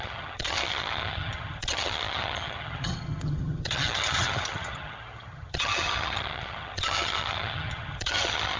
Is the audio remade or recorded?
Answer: remade